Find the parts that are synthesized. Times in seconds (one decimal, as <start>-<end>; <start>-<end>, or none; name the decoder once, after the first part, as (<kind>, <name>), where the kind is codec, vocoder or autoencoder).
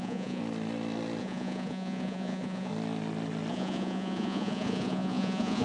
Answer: 0.0-0.4 (vocoder, Vocos); 1.2-2.7; 3.5-5.6